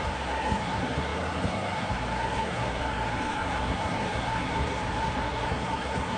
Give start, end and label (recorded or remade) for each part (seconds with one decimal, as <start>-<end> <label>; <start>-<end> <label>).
0.0-6.2 remade